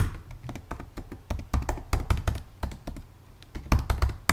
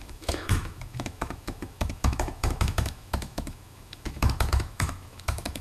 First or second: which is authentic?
first